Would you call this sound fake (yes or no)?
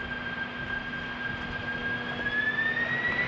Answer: no